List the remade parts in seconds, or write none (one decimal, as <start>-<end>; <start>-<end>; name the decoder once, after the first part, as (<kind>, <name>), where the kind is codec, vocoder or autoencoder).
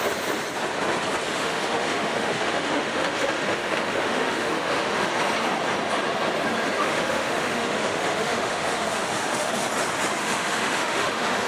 1.3-5.1 (autoencoder, DAC-VAE); 6.8-9.5; 10.2-11.5